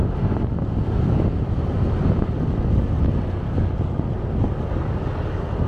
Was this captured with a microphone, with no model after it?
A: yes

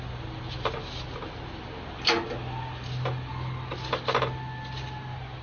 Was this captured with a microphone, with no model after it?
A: yes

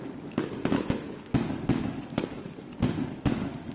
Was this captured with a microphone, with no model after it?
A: no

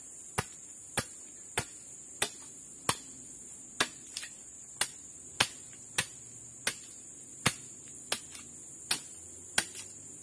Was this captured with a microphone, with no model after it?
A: yes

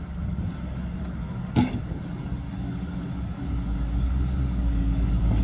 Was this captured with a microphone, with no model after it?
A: no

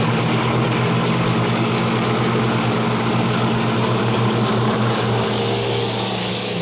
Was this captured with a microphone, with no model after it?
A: no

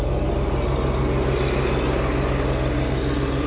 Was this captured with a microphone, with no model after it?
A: yes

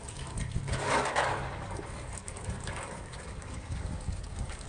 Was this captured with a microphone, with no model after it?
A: no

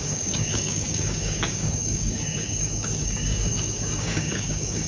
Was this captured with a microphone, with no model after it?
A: no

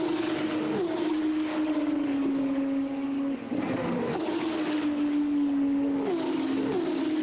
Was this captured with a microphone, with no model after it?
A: no